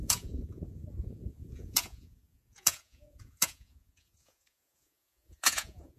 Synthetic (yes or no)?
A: yes